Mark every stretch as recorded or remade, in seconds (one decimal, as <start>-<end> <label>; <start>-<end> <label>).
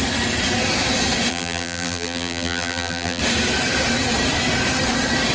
0.0-1.3 recorded; 1.3-3.2 remade; 3.2-5.3 recorded